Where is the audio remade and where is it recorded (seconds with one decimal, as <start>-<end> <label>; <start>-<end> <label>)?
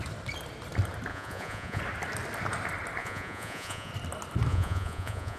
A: 0.0-1.1 recorded; 1.1-1.8 remade; 1.8-3.0 recorded; 3.0-3.9 remade; 3.9-4.5 recorded; 4.5-5.4 remade